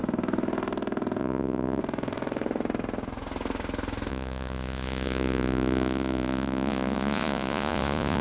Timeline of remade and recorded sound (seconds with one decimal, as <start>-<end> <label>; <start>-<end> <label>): 0.0-1.2 recorded; 1.2-1.8 remade; 1.8-4.1 recorded; 4.1-8.2 remade